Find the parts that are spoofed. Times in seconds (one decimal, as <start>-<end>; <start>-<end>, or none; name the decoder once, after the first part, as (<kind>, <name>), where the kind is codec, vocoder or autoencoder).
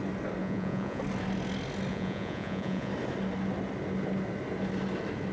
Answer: 0.4-1.0 (vocoder, Vocos); 1.9-2.9